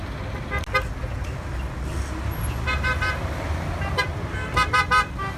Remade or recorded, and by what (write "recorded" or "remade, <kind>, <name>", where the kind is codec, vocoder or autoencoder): recorded